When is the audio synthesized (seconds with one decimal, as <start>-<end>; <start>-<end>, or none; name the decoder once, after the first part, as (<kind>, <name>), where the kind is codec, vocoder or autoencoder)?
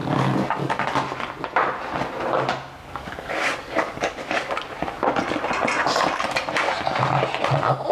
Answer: 0.0-0.8 (codec, DAC); 2.8-4.5